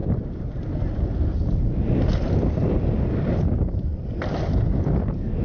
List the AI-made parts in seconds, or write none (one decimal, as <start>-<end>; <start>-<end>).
3.8-4.4